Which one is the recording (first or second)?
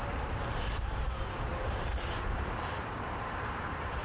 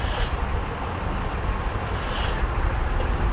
second